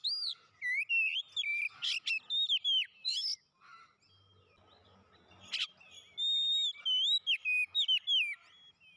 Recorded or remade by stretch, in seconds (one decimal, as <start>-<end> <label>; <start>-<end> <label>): 0.0-9.0 recorded